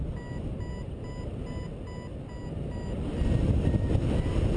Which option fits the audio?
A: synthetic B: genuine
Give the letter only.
B